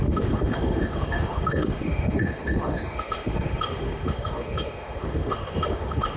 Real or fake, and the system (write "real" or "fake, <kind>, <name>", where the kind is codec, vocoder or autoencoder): fake, autoencoder, DAC-VAE